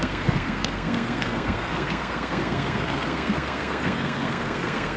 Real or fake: fake